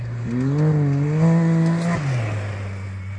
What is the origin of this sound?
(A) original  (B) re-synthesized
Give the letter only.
A